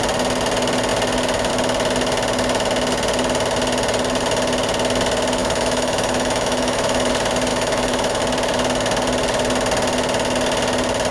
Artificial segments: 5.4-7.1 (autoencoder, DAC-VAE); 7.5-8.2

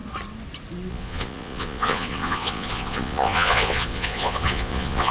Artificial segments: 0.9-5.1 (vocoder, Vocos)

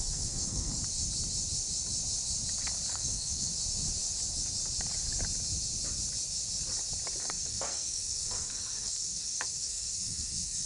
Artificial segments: 0.0-0.7 (codec, SNAC); 2.9-3.5; 7.2-10.7